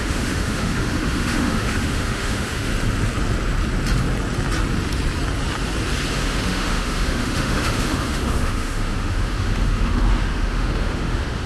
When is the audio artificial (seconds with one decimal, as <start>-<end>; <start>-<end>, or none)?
0.0-2.7; 6.1-11.5